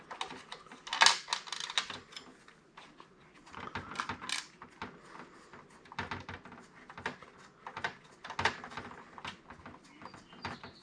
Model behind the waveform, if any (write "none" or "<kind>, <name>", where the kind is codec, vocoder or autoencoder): none